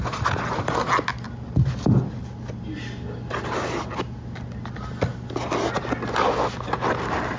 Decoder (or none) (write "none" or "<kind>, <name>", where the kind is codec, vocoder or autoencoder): none